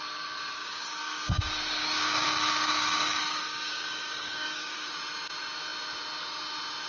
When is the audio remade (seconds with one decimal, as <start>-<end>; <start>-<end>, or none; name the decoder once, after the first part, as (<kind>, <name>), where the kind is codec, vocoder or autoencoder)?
0.6-1.4 (codec, DAC); 1.8-4.9